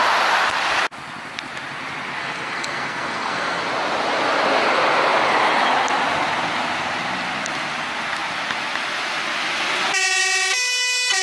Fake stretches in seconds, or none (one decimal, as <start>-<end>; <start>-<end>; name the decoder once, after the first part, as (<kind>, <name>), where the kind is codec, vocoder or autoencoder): 2.2-3.6 (codec, SNAC)